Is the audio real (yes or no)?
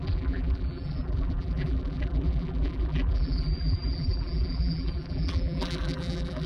no